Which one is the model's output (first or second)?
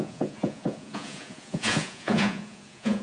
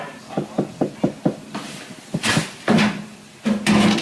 first